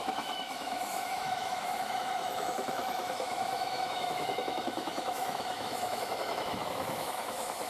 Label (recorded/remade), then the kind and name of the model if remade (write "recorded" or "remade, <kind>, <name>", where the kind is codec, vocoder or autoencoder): remade, autoencoder, DAC-VAE